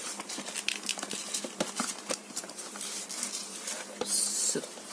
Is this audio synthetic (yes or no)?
no